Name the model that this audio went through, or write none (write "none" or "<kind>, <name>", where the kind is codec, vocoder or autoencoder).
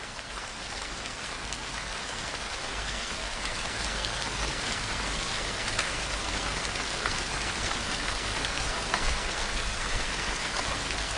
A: codec, SNAC